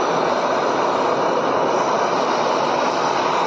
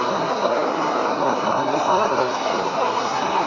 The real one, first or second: first